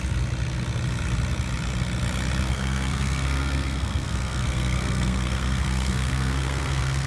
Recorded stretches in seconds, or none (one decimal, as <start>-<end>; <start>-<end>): 0.0-2.5